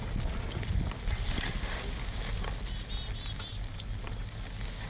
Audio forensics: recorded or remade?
recorded